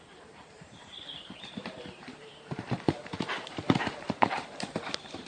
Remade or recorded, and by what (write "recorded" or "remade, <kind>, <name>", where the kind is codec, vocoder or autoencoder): remade, vocoder, BigVGAN v2